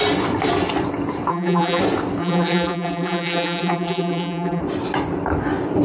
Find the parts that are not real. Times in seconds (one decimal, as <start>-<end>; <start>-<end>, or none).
1.3-1.8; 2.2-4.6